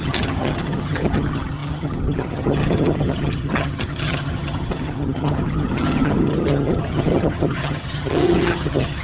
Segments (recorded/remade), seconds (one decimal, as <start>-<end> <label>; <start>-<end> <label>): 0.0-9.0 remade